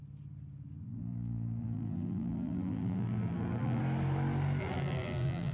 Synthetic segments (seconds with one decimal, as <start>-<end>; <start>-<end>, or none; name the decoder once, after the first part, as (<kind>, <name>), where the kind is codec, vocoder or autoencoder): 0.9-3.8 (vocoder, BigVGAN v2); 4.6-5.5

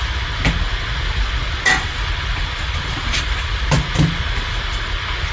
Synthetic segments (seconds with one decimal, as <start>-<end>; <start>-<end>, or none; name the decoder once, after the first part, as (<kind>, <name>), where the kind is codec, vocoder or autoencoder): 1.7-3.8 (vocoder, BigVGAN v2)